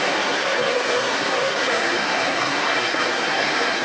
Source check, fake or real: fake